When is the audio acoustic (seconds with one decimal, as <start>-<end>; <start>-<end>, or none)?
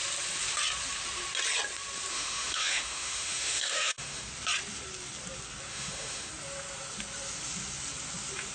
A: 0.0-2.1; 4.3-5.7; 6.3-8.5